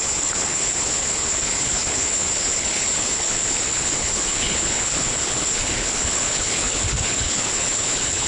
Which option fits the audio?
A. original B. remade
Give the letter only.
B